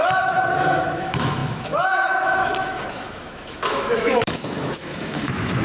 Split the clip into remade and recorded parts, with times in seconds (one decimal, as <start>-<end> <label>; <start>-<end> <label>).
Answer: 0.0-5.6 remade